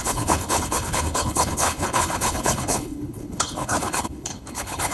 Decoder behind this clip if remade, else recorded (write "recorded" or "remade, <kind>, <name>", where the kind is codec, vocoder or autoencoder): remade, codec, HILCodec